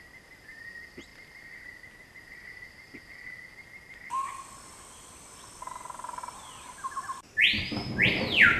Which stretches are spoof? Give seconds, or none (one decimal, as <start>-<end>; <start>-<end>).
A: none